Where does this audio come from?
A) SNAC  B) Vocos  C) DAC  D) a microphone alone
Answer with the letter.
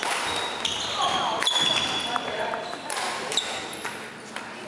D